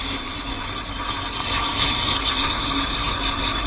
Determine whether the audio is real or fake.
real